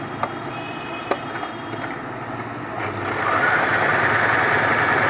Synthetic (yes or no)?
no